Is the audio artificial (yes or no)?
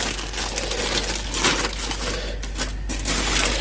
no